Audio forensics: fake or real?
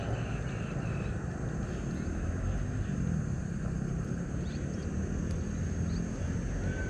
real